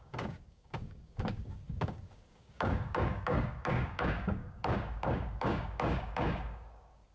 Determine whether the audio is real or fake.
fake